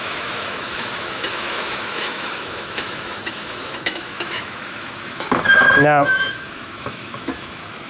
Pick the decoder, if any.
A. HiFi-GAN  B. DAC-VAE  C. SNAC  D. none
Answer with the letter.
B